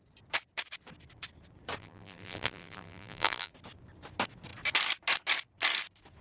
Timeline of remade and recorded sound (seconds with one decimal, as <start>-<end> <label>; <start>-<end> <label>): 0.0-1.8 recorded; 1.8-3.5 remade; 3.5-6.2 recorded